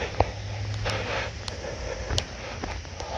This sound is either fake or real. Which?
real